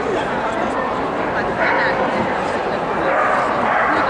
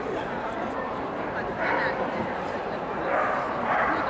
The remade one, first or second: second